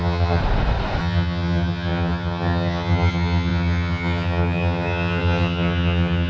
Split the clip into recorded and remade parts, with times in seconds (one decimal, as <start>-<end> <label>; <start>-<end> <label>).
0.0-0.4 remade; 0.4-1.0 recorded; 1.0-6.3 remade